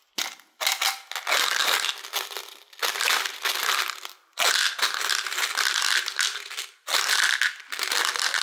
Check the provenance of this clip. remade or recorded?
recorded